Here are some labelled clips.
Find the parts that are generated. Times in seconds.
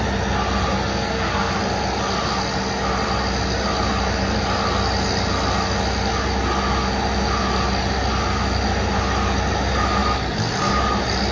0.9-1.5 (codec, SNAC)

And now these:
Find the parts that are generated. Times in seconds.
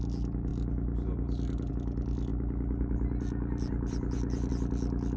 none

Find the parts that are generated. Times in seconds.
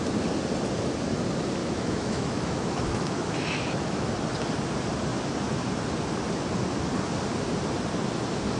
1.6-4.1 (autoencoder, DAC-VAE)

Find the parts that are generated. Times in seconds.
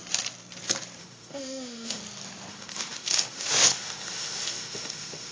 1.0-2.0 (autoencoder, DAC-VAE); 2.5-5.3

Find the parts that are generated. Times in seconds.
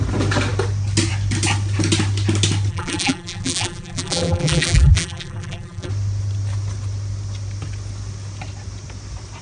2.7-5.9 (vocoder, BigVGAN v2)